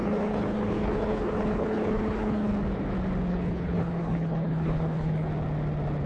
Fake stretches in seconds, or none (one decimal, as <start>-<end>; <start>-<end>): 0.0-2.5; 3.3-5.3